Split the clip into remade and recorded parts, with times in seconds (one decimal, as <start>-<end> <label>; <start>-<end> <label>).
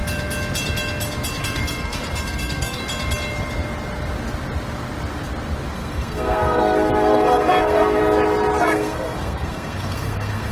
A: 0.0-1.4 recorded; 1.4-2.8 remade; 2.8-5.7 recorded; 5.7-8.0 remade; 8.0-8.6 recorded; 8.6-10.5 remade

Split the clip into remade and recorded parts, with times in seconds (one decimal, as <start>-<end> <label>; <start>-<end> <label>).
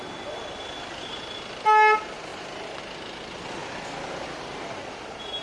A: 0.0-2.3 recorded; 2.3-2.8 remade; 2.8-5.4 recorded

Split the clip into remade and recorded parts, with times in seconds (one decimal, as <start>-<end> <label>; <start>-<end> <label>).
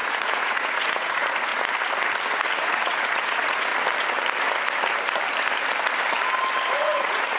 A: 0.0-1.5 remade; 1.5-2.6 recorded; 2.6-3.7 remade; 3.7-6.7 recorded; 6.7-7.4 remade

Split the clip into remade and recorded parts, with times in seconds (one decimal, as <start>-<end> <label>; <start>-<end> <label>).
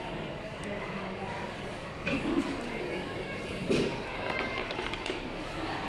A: 0.0-5.9 remade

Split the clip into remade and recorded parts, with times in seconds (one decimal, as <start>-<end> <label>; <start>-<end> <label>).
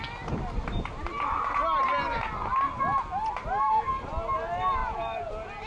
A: 0.0-4.8 recorded; 4.8-5.3 remade; 5.3-5.7 recorded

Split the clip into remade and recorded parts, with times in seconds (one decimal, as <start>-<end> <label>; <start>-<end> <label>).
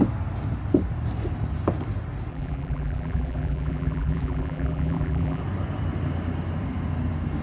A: 0.0-2.3 recorded; 2.3-5.4 remade; 5.4-7.4 recorded